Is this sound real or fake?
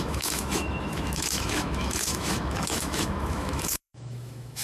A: fake